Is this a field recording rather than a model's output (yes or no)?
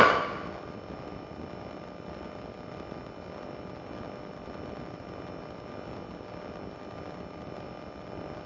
yes